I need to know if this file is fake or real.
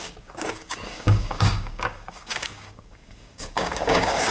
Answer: fake